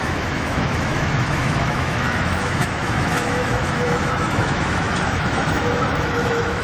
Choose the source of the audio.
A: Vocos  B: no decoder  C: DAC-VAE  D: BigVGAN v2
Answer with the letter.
C